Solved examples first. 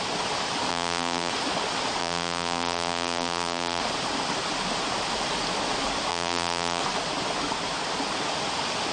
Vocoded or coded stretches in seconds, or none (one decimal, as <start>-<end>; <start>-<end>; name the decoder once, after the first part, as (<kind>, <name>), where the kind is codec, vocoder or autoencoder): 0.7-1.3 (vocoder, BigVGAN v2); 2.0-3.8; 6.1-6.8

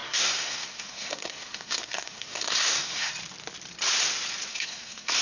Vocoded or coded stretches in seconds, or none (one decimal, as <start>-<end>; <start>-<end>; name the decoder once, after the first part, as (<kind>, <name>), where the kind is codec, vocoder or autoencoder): 0.0-3.1 (codec, SNAC); 4.5-5.2

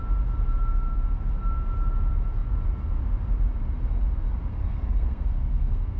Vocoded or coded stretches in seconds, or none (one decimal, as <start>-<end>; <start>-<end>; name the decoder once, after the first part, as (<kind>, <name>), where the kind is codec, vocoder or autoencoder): 4.5-6.0 (codec, SNAC)

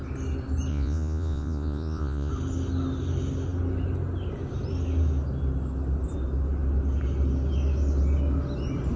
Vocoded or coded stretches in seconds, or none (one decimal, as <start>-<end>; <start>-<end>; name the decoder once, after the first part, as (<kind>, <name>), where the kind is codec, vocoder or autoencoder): 0.7-2.3 (vocoder, Vocos)